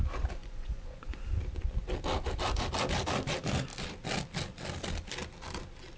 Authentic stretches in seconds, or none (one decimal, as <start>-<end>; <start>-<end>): 0.0-0.4; 1.2-6.0